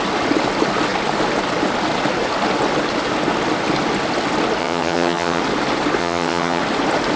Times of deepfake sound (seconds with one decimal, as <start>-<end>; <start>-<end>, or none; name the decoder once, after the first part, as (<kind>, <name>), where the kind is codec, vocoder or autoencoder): 4.6-5.4 (vocoder, HiFi-GAN); 6.0-6.6